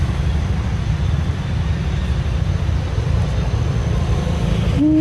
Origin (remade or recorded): recorded